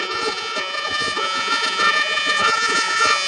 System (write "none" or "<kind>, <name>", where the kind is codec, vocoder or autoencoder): vocoder, Vocos